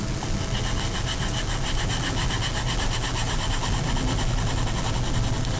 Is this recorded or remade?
recorded